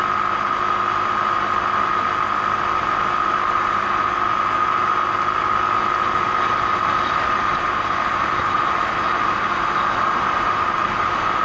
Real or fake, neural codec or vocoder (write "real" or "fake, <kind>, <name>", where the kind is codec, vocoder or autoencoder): real